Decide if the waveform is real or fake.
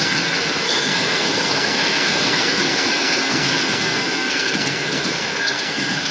fake